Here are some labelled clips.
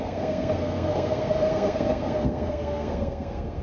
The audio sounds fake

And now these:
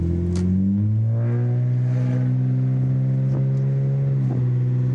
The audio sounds real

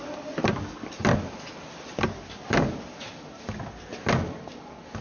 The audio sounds real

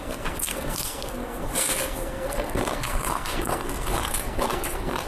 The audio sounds fake